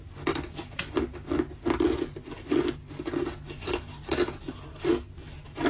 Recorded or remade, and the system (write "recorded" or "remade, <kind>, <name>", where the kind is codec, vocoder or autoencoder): recorded